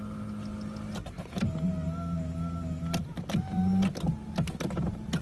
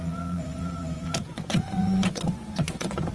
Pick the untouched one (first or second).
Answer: first